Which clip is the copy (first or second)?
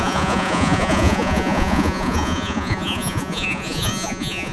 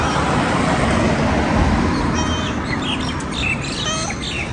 first